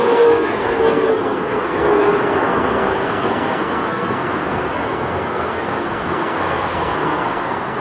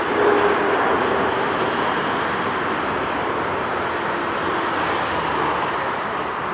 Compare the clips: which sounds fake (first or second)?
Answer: first